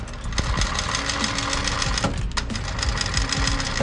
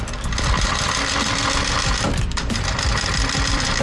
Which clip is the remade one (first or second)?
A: second